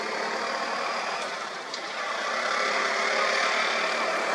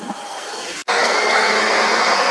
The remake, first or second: second